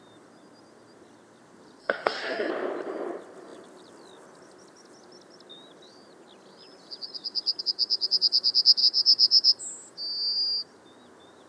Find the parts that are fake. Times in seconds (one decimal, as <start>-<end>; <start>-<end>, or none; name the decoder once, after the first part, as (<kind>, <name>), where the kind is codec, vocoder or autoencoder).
1.8-2.5 (codec, SNAC)